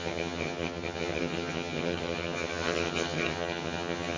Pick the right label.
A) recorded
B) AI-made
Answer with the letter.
B